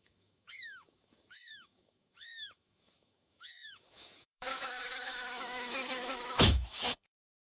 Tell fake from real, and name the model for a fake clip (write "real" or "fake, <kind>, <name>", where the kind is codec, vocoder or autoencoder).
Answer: fake, autoencoder, DAC-VAE